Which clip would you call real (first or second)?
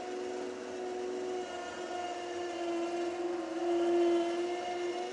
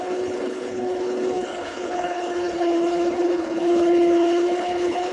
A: first